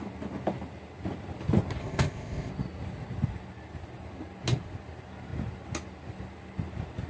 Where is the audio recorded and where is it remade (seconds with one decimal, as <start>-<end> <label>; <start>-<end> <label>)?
0.0-1.8 recorded; 1.8-2.5 remade; 2.5-7.1 recorded